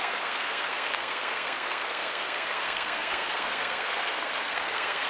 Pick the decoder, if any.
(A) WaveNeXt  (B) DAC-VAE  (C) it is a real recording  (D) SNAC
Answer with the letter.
D